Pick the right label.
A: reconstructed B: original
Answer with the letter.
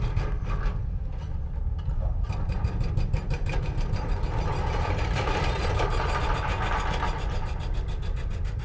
B